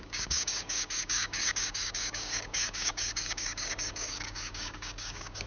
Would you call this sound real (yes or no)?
no